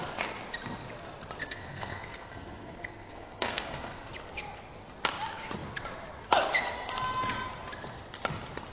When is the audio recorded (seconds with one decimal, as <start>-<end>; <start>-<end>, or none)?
0.0-1.4; 4.1-8.7